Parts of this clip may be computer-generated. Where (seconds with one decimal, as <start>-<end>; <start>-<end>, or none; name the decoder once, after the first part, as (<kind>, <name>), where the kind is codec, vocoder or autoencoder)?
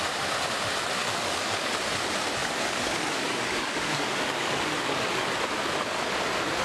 1.0-1.7 (codec, DAC); 2.4-5.3